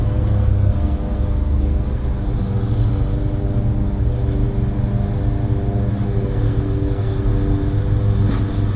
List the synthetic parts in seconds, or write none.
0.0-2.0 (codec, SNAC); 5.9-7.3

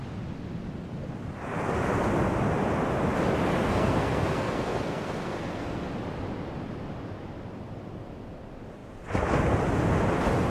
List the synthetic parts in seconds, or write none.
3.7-5.9 (codec, SNAC)